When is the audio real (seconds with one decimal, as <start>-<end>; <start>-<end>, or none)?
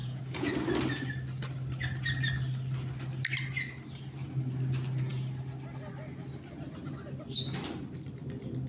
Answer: 0.5-8.7